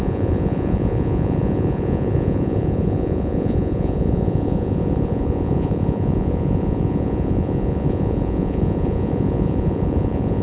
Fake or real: fake